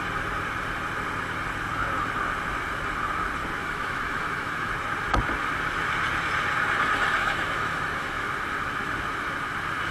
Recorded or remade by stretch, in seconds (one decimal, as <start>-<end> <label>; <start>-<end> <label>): 0.0-3.6 recorded; 3.6-4.7 remade; 4.7-7.2 recorded; 7.2-8.3 remade; 8.3-9.9 recorded